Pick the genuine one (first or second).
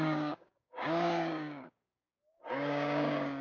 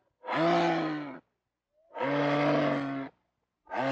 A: second